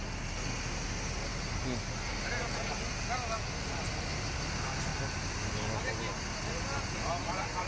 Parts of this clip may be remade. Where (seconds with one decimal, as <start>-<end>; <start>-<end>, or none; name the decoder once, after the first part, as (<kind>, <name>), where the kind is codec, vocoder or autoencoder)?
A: none